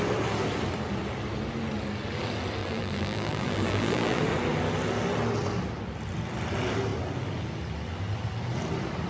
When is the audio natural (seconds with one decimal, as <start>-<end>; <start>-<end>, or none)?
0.0-2.6; 4.2-9.1